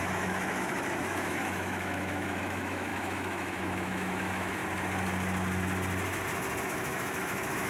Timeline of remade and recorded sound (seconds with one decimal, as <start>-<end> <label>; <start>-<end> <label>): 0.0-4.6 remade; 4.6-6.6 recorded; 6.6-7.7 remade